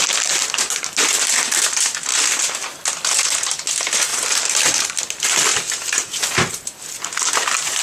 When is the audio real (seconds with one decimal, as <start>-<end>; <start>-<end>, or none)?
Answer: 0.0-4.1; 5.0-5.5; 6.1-7.8